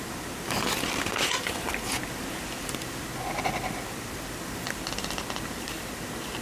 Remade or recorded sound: recorded